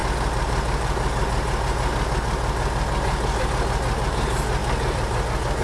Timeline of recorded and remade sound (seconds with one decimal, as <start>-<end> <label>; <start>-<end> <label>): 0.0-5.6 recorded